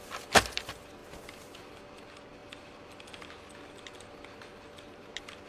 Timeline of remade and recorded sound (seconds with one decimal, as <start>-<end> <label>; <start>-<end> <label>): 0.0-5.5 recorded